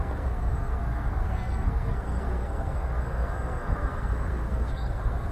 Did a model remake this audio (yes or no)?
yes